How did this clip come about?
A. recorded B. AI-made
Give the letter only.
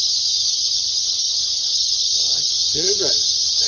B